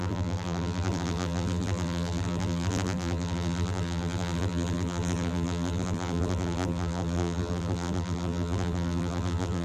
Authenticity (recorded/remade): remade